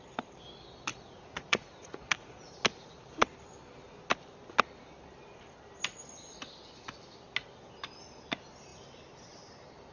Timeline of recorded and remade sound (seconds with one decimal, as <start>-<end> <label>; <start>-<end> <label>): 0.0-0.9 recorded; 0.9-2.6 remade; 2.6-9.9 recorded